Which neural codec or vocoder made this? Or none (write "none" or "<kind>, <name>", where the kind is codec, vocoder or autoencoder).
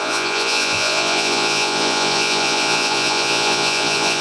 vocoder, Vocos